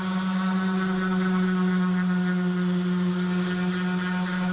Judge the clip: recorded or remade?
recorded